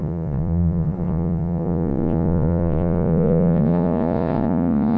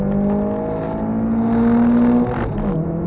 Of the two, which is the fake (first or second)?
first